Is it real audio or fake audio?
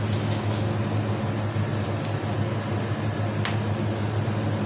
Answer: real